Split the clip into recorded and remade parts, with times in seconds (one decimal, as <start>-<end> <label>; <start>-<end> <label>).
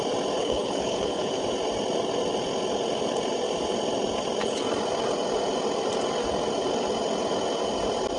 0.0-0.4 recorded; 0.4-1.4 remade; 1.4-8.2 recorded